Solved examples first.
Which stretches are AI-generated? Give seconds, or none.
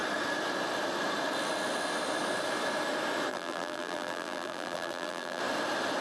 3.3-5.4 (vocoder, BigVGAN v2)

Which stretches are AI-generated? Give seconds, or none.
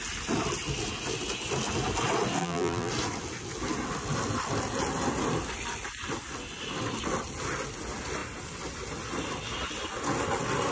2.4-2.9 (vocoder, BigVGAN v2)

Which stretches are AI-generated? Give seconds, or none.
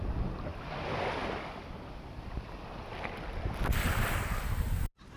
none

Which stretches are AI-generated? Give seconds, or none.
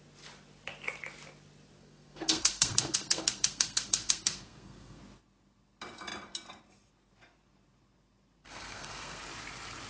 1.8-5.0 (codec, SNAC); 8.4-9.2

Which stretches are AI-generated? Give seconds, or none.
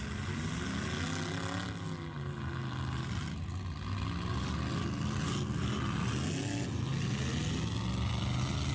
none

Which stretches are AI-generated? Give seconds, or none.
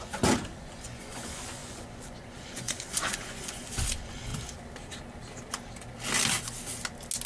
0.0-4.3 (vocoder, Vocos)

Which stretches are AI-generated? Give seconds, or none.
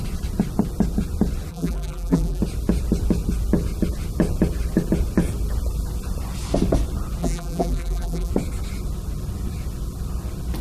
1.5-2.4 (vocoder, BigVGAN v2); 7.2-8.3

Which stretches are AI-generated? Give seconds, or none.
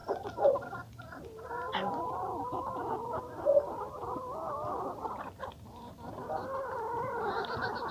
none